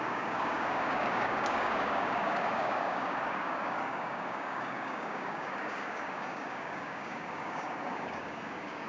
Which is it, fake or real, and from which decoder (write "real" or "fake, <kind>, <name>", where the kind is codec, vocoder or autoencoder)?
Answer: fake, codec, DAC